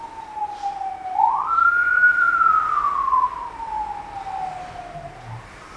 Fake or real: real